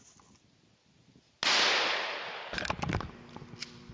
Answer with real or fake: real